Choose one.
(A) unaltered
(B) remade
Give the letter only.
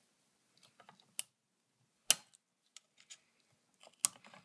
A